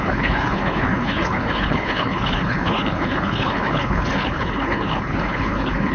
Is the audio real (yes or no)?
no